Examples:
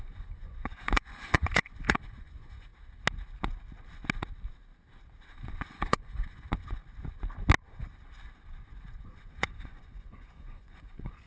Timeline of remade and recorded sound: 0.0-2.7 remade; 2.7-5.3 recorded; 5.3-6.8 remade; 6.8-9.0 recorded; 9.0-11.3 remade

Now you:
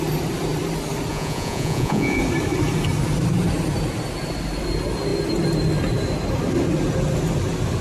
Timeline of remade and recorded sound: 0.0-1.1 recorded; 1.1-2.2 remade; 2.2-7.8 recorded

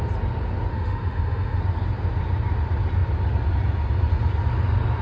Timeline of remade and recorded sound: 0.0-0.7 recorded; 0.7-1.6 remade; 1.6-5.0 recorded